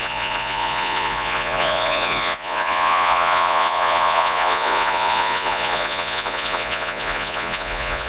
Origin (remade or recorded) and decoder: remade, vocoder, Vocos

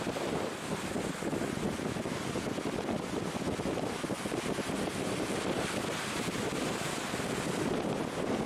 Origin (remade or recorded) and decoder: remade, vocoder, BigVGAN v2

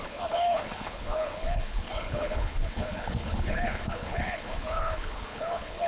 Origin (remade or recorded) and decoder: remade, codec, HILCodec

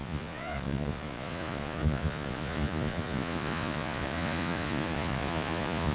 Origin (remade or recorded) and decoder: remade, vocoder, Vocos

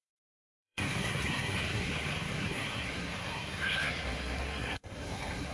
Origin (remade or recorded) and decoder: remade, codec, SNAC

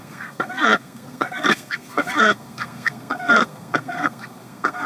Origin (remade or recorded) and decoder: remade, codec, SNAC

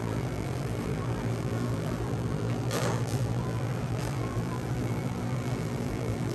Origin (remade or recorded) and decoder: remade, vocoder, BigVGAN v2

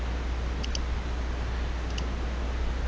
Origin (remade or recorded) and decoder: recorded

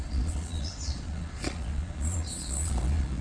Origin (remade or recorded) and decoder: remade, vocoder, Vocos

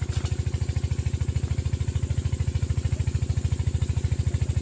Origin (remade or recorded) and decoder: recorded